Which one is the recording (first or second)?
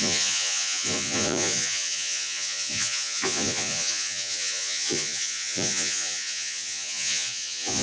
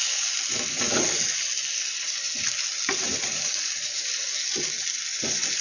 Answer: second